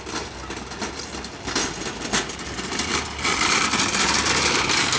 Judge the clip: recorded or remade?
recorded